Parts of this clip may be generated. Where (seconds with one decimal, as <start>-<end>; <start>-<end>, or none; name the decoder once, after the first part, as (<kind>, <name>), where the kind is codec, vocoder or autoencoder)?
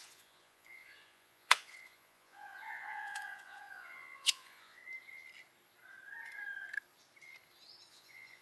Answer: 0.0-4.8 (vocoder, Vocos); 7.9-8.4